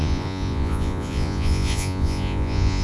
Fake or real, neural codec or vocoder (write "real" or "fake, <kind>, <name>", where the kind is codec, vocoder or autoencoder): fake, vocoder, Vocos